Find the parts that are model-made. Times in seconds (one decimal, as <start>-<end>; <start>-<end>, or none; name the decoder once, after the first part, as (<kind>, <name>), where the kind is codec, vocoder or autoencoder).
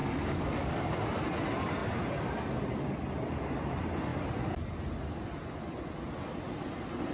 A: 0.0-0.7 (codec, DAC)